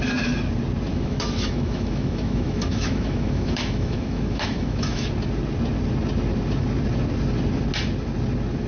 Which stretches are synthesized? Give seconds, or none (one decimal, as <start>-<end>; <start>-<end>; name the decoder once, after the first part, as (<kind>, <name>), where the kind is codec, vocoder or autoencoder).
0.9-5.1 (autoencoder, DAC-VAE)

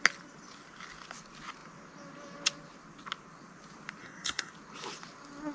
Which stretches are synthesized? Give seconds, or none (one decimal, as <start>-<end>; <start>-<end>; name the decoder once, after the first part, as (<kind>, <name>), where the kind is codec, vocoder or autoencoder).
4.0-4.5 (codec, SNAC)

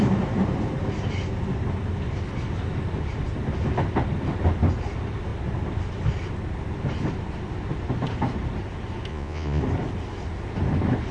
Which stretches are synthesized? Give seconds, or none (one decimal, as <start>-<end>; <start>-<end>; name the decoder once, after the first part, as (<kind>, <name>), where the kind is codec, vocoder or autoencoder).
9.1-9.6 (vocoder, Vocos)

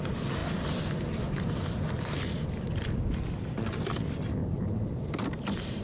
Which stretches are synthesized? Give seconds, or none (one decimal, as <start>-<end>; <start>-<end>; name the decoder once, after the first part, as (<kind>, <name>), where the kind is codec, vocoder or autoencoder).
4.4-5.8 (vocoder, BigVGAN v2)

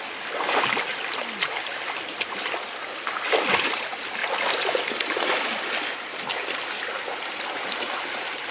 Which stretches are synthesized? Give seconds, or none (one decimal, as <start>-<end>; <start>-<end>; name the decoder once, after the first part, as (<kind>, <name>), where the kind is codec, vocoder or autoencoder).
none

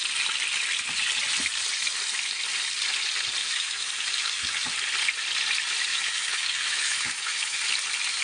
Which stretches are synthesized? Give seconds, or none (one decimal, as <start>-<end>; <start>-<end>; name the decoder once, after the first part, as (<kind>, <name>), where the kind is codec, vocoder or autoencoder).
3.4-4.7 (autoencoder, DAC-VAE); 5.9-7.6

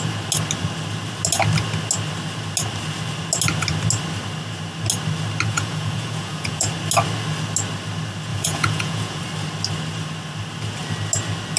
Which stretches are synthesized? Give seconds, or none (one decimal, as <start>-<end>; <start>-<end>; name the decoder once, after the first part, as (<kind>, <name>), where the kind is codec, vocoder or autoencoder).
5.5-6.7 (vocoder, Vocos); 8.3-9.2

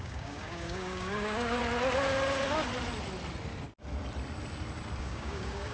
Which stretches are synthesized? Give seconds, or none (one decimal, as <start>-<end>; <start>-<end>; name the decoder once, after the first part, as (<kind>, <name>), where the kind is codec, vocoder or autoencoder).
0.0-1.6 (codec, DAC); 5.0-5.7